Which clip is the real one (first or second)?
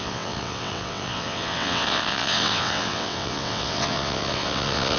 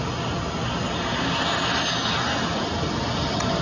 second